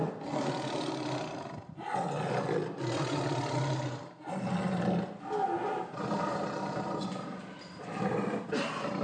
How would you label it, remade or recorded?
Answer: recorded